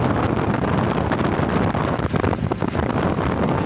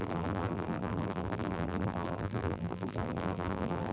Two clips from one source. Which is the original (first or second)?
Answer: first